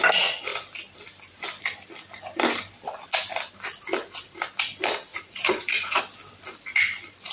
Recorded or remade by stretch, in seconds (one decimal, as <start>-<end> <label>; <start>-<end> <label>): 0.0-5.1 recorded; 5.1-6.0 remade; 6.0-7.3 recorded